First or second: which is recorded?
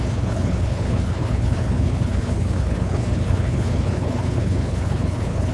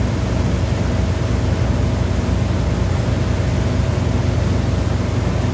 second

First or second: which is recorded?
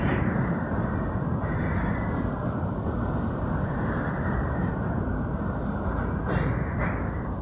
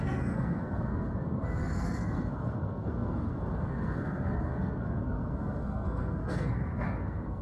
first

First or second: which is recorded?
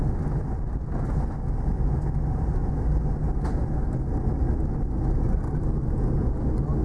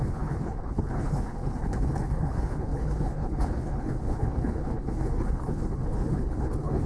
first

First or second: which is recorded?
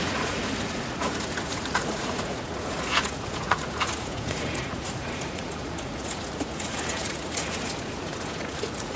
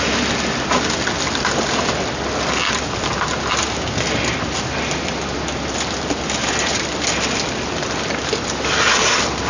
second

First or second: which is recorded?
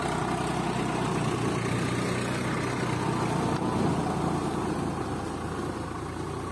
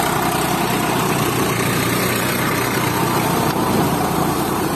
first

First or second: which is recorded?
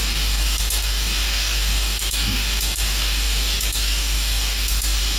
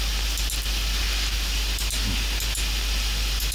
second